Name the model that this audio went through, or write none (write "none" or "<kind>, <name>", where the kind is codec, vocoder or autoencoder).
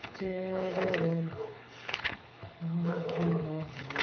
codec, HILCodec